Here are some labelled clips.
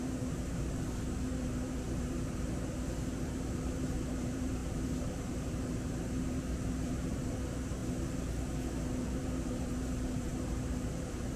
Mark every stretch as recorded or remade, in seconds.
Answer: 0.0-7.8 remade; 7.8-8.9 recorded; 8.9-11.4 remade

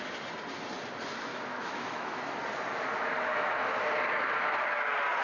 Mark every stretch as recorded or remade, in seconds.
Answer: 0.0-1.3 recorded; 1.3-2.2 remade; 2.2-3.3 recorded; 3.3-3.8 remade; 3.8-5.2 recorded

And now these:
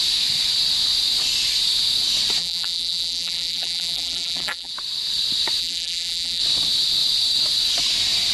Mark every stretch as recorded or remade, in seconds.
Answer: 0.0-2.4 recorded; 2.4-4.7 remade; 4.7-5.6 recorded; 5.6-6.4 remade; 6.4-8.3 recorded

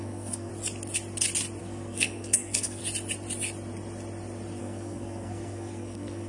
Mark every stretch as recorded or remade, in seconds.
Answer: 0.0-0.5 remade; 0.5-1.6 recorded; 1.6-2.8 remade; 2.8-4.6 recorded; 4.6-6.3 remade